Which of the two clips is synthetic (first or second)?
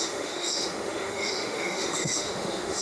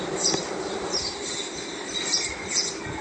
first